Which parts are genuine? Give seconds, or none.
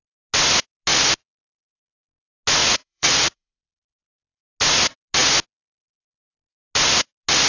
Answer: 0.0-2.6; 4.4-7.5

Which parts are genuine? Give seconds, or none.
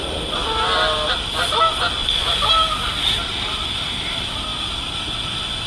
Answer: 0.0-2.0; 2.5-5.7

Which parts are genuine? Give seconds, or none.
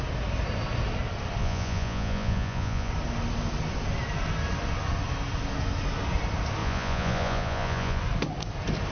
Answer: 0.0-1.4; 2.9-6.6; 8.0-8.9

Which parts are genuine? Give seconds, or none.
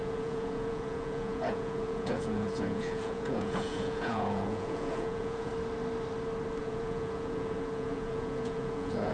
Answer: 5.5-6.6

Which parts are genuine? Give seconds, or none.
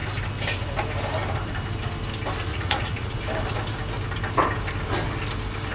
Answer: 0.0-2.5; 3.2-5.7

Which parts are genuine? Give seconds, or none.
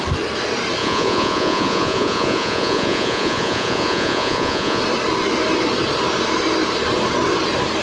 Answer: 0.0-0.8; 4.8-7.8